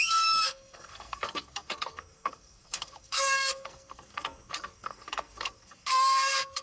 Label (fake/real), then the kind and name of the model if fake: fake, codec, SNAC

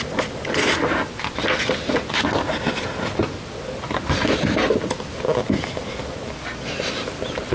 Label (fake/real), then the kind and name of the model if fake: real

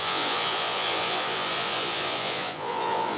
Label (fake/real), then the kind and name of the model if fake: fake, vocoder, Vocos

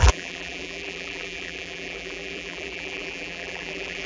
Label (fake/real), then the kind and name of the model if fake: fake, vocoder, BigVGAN v2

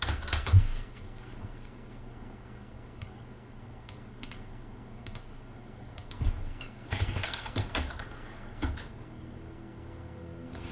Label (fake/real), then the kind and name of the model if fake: fake, codec, SNAC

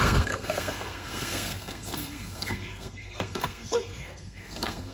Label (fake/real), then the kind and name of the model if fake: fake, codec, SNAC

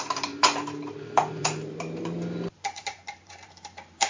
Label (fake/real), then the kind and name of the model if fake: fake, vocoder, BigVGAN v2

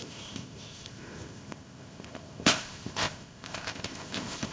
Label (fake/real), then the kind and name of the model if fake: fake, codec, ZipCodec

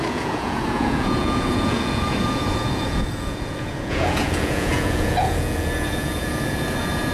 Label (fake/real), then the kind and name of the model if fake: fake, vocoder, Vocos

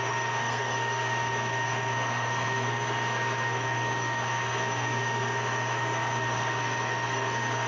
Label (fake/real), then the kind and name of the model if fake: fake, codec, SNAC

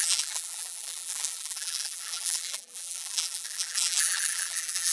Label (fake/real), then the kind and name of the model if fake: fake, vocoder, BigVGAN v2